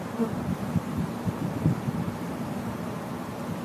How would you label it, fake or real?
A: real